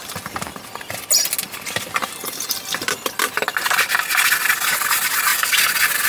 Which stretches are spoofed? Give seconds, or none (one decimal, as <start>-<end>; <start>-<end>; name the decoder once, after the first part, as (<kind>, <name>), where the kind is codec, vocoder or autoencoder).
2.0-3.6 (vocoder, BigVGAN v2); 5.3-6.1